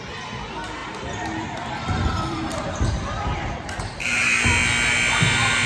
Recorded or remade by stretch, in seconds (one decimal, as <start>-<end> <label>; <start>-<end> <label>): 0.0-0.8 recorded; 0.8-3.5 remade; 3.5-5.7 recorded